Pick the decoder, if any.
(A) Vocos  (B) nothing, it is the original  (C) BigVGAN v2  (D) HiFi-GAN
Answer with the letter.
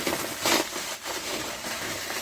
B